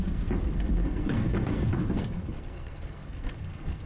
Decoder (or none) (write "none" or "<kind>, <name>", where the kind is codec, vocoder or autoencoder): codec, SNAC